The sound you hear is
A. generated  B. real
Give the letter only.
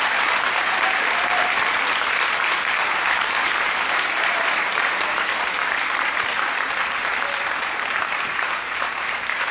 A